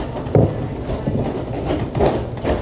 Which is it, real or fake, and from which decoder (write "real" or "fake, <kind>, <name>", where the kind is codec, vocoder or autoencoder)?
real